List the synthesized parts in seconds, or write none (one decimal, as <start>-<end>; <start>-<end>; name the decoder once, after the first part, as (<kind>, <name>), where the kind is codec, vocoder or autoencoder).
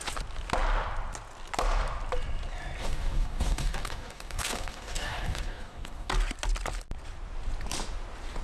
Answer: 2.8-6.1 (codec, DAC)